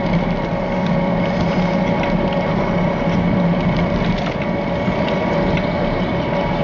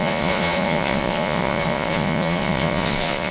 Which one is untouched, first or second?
first